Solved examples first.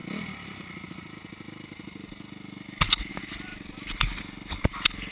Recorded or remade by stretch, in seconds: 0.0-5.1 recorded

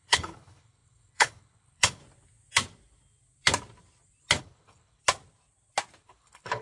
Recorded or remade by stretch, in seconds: 0.0-2.0 remade; 2.0-4.4 recorded; 4.4-5.0 remade; 5.0-6.0 recorded; 6.0-6.6 remade

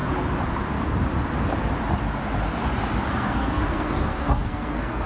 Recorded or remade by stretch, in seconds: 0.0-3.1 recorded; 3.1-5.1 remade

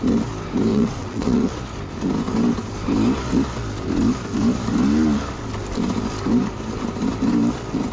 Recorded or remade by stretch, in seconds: 0.0-0.7 recorded; 0.7-1.5 remade; 1.5-7.9 recorded

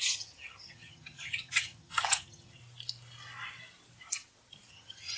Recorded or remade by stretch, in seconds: 0.0-2.6 remade; 2.6-4.7 recorded; 4.7-5.2 remade

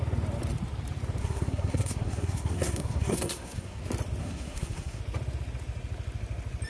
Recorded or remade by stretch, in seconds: 0.0-1.2 recorded; 1.2-3.8 remade; 3.8-4.2 recorded; 4.2-5.0 remade; 5.0-6.7 recorded

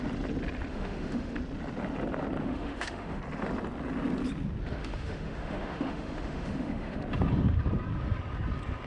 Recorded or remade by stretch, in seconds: 0.0-0.7 recorded; 0.7-1.4 remade; 1.4-2.4 recorded; 2.4-3.2 remade; 3.2-4.8 recorded; 4.8-7.0 remade; 7.0-8.9 recorded

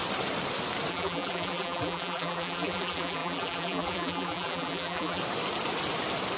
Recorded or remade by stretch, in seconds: 0.0-0.9 recorded; 0.9-5.2 remade; 5.2-6.4 recorded